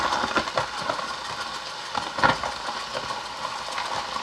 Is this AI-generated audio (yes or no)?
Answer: no